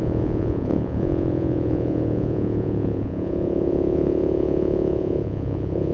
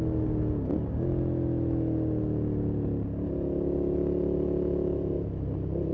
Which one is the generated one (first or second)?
first